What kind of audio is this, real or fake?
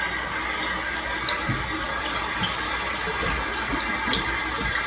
real